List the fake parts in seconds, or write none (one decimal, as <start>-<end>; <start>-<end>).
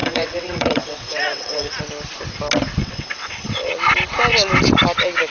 0.0-1.8; 2.8-3.7